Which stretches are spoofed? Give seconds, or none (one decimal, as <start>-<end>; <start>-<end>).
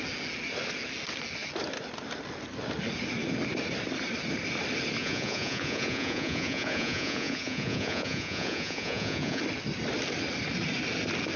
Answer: 5.0-9.4